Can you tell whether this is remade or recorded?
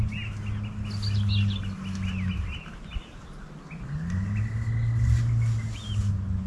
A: recorded